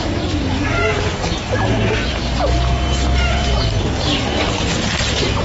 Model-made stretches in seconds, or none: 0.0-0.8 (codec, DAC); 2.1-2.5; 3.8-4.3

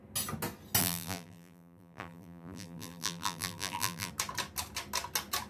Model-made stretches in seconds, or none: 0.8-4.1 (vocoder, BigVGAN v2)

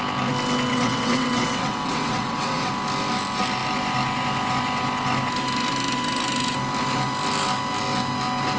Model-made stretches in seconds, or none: 0.7-2.7 (vocoder, WaveNeXt)